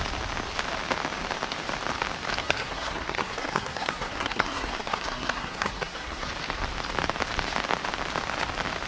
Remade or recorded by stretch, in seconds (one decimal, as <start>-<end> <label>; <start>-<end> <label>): 0.0-2.4 recorded; 2.4-6.3 remade; 6.3-8.9 recorded